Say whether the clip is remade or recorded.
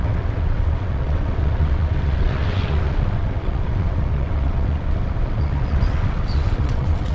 remade